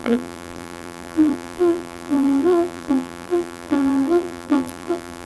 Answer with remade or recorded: remade